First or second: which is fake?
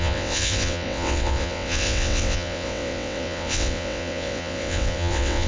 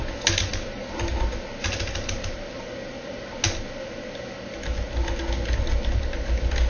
first